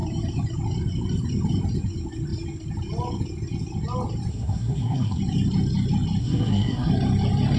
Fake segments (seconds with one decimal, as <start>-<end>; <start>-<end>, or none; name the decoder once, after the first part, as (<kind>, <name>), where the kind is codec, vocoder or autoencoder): 4.3-5.2 (codec, SNAC); 6.2-6.9